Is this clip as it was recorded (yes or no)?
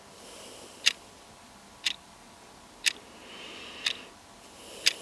yes